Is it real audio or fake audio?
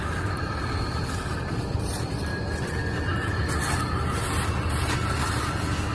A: real